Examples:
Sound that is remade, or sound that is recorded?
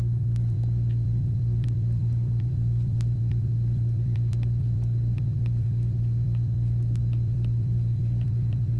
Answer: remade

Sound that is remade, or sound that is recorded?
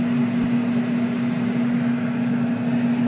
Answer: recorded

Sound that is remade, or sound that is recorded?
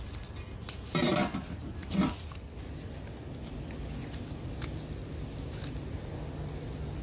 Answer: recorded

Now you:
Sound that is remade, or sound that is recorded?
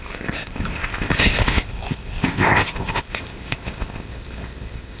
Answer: remade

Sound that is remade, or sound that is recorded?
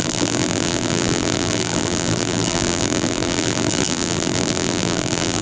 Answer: remade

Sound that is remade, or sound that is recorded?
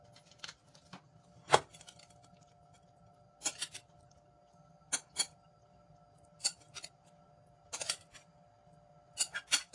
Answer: recorded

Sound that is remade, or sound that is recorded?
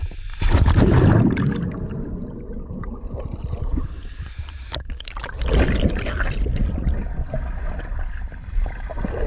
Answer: recorded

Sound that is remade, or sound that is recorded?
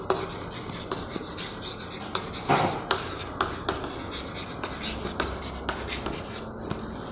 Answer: recorded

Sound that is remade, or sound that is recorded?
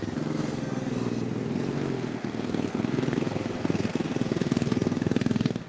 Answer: remade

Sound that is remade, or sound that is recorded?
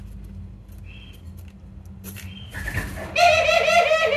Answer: recorded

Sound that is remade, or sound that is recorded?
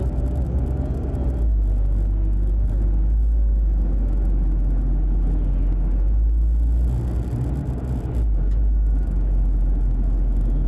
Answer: recorded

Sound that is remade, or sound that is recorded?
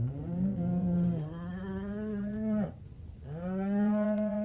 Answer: remade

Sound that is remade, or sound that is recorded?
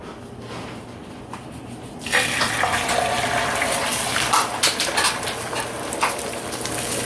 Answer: recorded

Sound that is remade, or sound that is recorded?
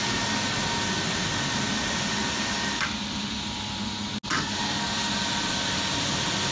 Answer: recorded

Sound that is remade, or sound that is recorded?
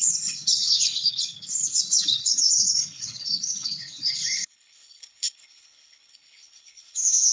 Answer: remade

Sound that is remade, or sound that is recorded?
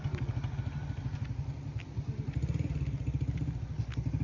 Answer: recorded